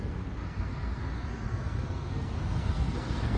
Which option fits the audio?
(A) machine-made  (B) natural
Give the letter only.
A